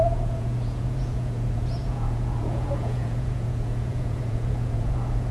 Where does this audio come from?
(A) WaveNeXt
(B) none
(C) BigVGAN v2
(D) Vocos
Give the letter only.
D